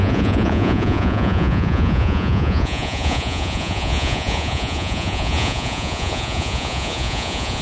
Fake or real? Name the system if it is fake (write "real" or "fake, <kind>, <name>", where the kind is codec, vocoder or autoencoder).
fake, vocoder, Vocos